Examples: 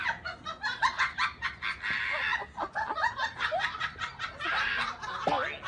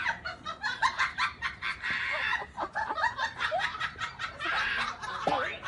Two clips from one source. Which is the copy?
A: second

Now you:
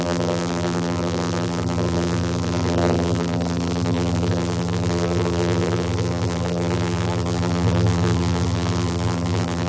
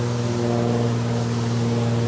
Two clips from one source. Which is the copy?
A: first